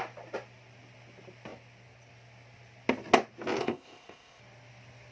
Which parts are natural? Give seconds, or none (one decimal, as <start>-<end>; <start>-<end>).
0.0-3.6; 4.4-5.1